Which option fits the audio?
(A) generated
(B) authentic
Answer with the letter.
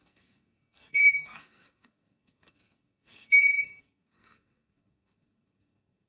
A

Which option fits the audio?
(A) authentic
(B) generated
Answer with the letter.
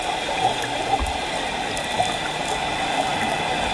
A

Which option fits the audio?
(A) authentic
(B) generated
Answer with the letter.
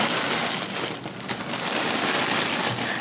A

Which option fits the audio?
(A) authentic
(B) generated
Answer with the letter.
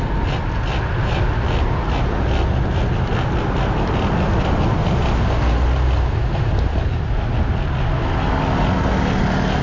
A